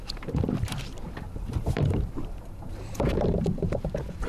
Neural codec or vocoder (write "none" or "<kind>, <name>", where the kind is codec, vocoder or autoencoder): vocoder, BigVGAN v2